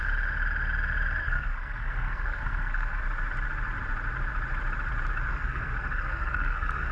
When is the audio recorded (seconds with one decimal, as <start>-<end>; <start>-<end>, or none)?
0.0-1.2; 3.0-5.3